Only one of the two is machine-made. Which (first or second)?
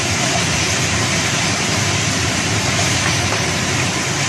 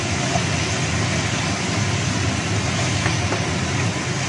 first